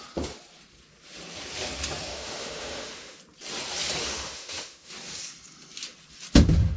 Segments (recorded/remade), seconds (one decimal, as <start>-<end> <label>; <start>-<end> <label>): 0.0-2.1 recorded; 2.1-3.2 remade; 3.2-4.0 recorded; 4.0-4.9 remade; 4.9-6.8 recorded